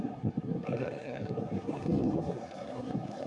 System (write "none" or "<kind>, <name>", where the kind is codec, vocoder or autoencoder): codec, SNAC